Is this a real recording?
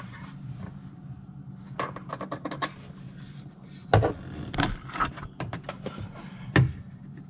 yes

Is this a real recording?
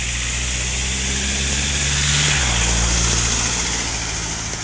yes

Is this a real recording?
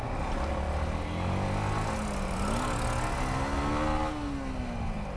yes